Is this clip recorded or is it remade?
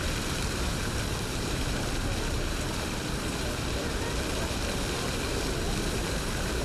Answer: remade